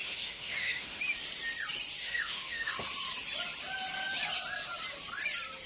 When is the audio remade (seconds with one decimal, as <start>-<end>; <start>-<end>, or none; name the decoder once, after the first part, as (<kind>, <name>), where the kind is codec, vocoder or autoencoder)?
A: 0.0-1.0 (autoencoder, DAC-VAE); 2.0-2.7